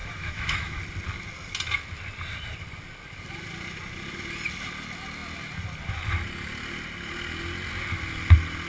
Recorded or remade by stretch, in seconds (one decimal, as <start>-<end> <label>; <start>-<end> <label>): 0.0-0.8 remade; 0.8-8.7 recorded